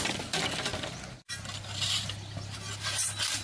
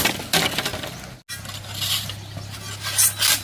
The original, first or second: second